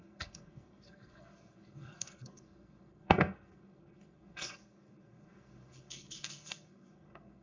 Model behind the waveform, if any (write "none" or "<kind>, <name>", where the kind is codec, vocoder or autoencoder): codec, SNAC